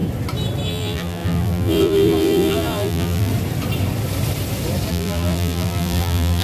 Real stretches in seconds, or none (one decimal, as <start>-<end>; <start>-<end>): 0.0-0.7; 3.3-4.9